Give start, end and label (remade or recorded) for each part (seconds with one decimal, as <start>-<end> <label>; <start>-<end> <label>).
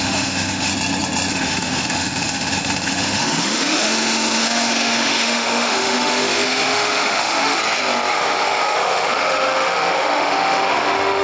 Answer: 0.0-0.7 remade; 0.7-1.3 recorded; 1.3-7.6 remade; 7.6-8.1 recorded; 8.1-11.2 remade